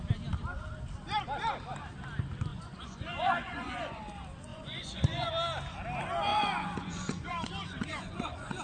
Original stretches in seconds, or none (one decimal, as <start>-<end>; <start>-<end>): 0.0-2.5; 4.0-4.5; 5.3-6.3